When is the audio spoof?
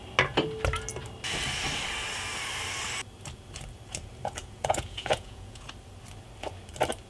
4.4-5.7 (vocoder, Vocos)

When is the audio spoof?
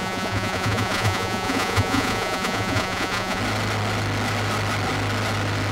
0.0-3.4 (vocoder, Vocos)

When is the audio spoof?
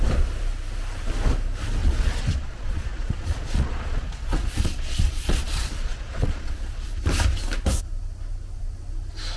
1.8-6.9 (vocoder, Vocos)